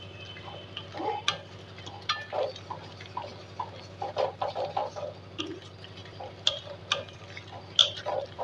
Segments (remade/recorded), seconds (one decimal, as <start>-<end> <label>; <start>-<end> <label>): 0.0-6.0 recorded; 6.0-7.2 remade; 7.2-7.8 recorded; 7.8-8.4 remade